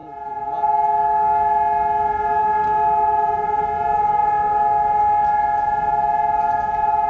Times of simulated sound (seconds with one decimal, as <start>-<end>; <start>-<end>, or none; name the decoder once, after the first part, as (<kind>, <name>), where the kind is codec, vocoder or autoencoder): none